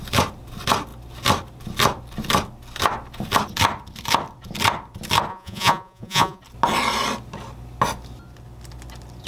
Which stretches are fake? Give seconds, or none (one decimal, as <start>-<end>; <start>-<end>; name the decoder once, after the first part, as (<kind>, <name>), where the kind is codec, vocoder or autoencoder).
5.3-6.4 (vocoder, Vocos)